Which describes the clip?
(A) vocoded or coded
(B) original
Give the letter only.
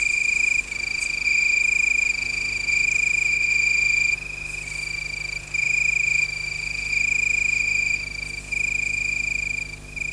B